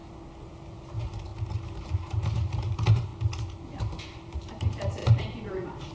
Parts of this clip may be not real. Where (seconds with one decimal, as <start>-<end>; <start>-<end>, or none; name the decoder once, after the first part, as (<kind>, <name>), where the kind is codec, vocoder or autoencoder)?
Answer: 0.9-1.3 (vocoder, BigVGAN v2); 1.8-3.1; 3.8-5.9